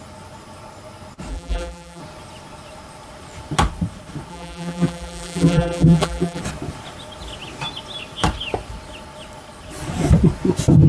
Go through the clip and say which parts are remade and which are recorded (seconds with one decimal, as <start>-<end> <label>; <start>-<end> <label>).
0.0-1.3 recorded; 1.3-2.0 remade; 2.0-4.3 recorded; 4.3-6.4 remade; 6.4-10.9 recorded